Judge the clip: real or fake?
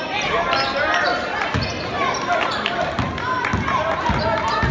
real